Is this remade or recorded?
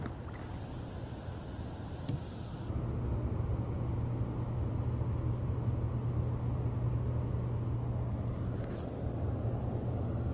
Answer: recorded